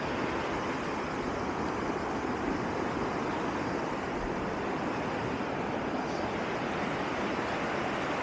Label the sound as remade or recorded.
recorded